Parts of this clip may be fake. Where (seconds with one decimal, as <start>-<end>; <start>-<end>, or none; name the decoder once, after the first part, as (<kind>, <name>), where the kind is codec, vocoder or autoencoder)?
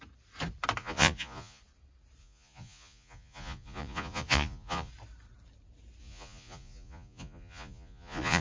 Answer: 0.8-1.6 (vocoder, Vocos); 2.2-4.9; 6.0-8.4